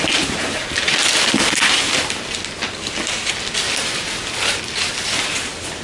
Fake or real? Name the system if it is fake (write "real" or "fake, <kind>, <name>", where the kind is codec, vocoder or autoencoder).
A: real